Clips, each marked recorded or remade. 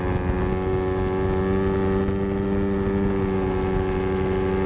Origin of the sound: recorded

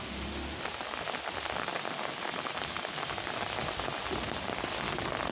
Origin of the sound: recorded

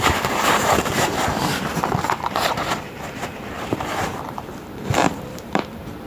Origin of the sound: remade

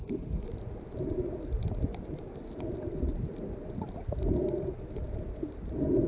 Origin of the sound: remade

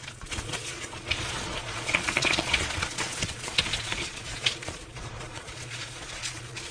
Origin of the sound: remade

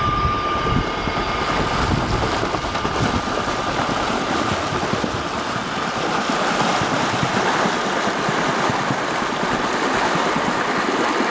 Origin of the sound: recorded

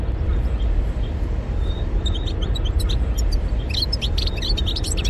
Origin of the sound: remade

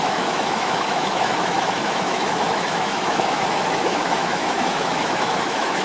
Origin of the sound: remade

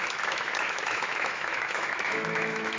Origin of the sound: remade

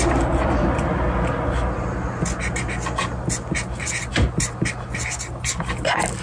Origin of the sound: recorded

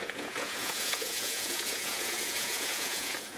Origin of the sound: remade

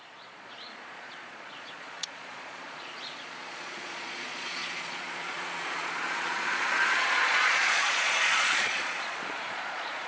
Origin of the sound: remade